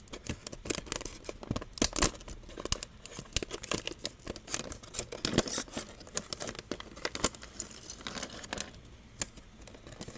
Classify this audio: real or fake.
real